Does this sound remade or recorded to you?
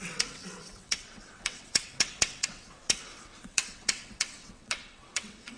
remade